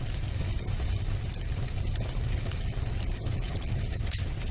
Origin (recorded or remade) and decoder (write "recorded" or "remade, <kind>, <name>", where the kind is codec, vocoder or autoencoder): recorded